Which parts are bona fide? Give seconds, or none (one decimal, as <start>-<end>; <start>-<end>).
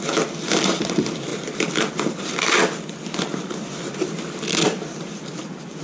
none